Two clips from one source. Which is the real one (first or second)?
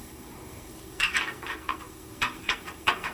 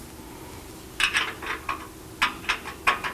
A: second